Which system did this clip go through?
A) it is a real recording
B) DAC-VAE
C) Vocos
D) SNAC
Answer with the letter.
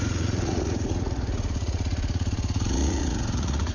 C